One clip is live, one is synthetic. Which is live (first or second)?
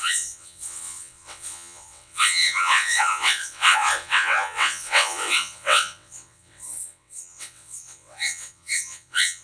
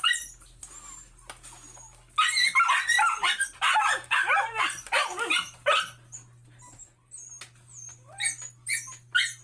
second